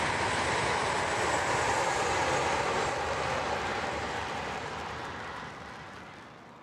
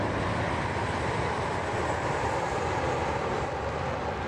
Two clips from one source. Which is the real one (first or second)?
first